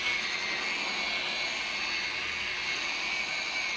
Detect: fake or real real